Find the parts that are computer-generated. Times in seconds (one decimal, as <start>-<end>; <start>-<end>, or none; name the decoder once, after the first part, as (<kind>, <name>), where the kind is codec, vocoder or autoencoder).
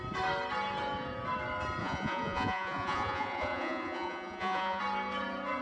1.8-4.8 (vocoder, Vocos)